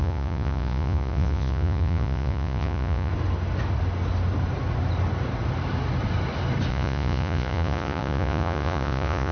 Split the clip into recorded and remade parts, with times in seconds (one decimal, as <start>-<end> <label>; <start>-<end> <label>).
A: 0.0-3.1 remade; 3.1-6.7 recorded; 6.7-9.3 remade

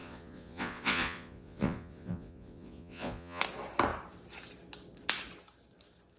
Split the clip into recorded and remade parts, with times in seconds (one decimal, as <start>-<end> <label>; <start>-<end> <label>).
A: 0.0-3.4 remade; 3.4-6.2 recorded